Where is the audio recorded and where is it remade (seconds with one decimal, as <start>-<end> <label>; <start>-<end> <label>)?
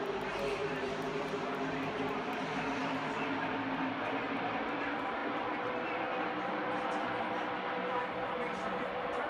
0.0-0.6 recorded; 0.6-1.2 remade; 1.2-2.8 recorded; 2.8-3.9 remade; 3.9-9.3 recorded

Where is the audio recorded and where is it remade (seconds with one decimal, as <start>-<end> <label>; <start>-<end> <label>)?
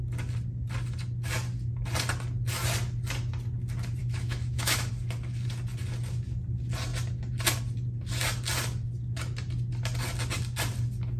0.0-4.0 recorded; 4.0-4.9 remade; 4.9-11.2 recorded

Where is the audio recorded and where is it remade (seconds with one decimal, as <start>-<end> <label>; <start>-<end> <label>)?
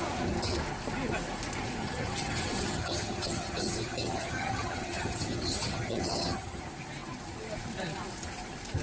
0.0-1.8 recorded; 1.8-6.6 remade; 6.6-8.8 recorded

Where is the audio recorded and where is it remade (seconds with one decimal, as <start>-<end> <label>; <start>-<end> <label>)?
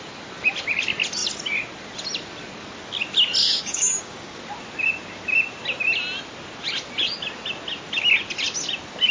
0.0-3.4 recorded; 3.4-4.4 remade; 4.4-9.1 recorded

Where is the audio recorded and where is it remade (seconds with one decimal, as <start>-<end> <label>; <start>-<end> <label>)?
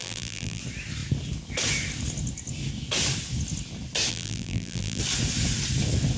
0.0-0.6 remade; 0.6-4.1 recorded; 4.1-5.0 remade; 5.0-6.2 recorded